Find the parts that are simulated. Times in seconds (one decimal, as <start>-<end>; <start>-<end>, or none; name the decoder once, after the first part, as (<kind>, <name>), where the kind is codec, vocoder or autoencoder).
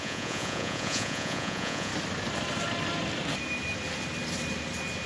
0.0-1.9 (vocoder, Vocos)